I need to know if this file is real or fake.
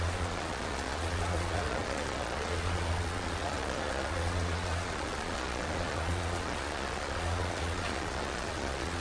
fake